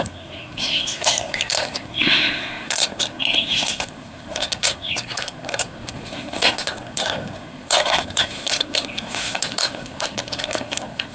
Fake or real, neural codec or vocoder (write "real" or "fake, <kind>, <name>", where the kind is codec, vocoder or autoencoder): fake, codec, SNAC